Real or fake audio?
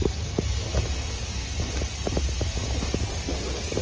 real